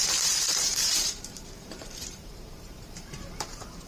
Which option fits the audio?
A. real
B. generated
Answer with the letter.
B